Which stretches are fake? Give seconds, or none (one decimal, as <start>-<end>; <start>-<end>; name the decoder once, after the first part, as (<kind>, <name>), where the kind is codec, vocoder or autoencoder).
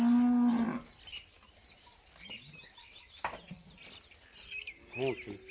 none